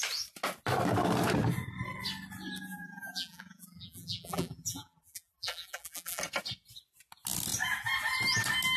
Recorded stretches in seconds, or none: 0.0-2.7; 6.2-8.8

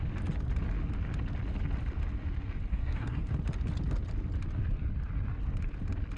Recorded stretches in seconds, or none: 0.0-2.7; 3.3-6.2

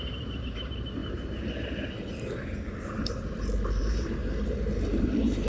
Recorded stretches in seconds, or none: 1.0-2.4

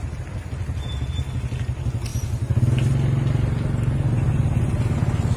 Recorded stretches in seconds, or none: 0.0-5.4

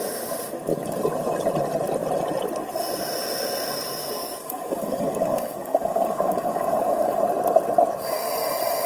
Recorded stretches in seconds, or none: 0.0-4.2; 7.2-8.9

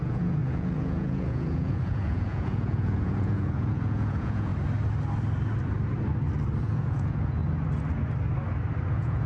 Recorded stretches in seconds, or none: 4.5-6.6; 7.4-8.9

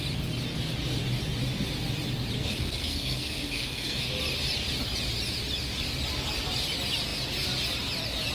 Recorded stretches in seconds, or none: 0.0-2.4; 4.1-8.3